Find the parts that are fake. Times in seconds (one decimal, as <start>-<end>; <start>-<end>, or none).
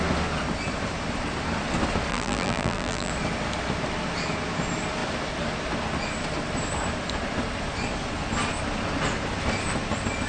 2.1-3.1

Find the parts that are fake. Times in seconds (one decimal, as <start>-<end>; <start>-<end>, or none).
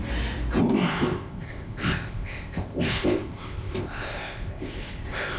0.6-5.4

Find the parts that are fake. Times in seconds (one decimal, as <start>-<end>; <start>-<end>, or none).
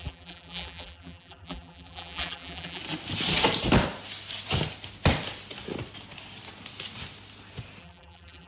0.0-2.8; 7.8-8.5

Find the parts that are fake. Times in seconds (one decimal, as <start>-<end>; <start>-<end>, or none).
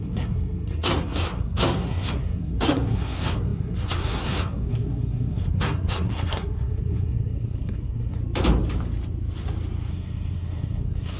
0.0-8.2; 9.9-11.2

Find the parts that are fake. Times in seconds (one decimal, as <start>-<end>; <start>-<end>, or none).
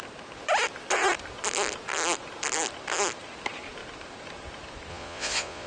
4.9-5.7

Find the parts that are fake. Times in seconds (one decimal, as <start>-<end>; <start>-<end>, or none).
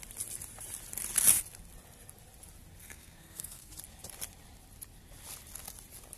2.8-3.7